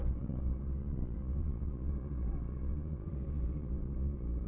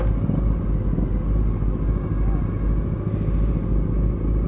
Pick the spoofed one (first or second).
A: first